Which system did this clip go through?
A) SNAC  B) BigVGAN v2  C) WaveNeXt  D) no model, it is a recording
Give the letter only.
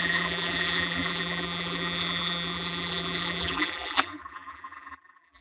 B